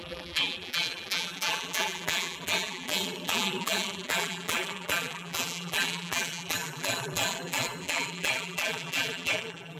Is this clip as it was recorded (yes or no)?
no